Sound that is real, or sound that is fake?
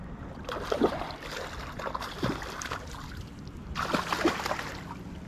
real